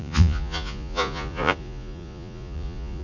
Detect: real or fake fake